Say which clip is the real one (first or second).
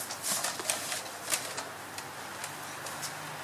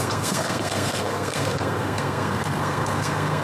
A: first